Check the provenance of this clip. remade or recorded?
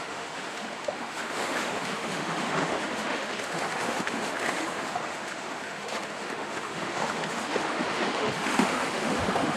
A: remade